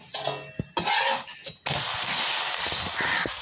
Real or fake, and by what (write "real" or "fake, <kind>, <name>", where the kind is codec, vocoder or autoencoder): real